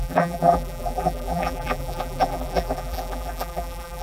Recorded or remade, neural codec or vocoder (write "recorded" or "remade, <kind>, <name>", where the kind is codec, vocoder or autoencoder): remade, vocoder, BigVGAN v2